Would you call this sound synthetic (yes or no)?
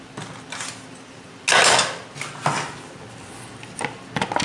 no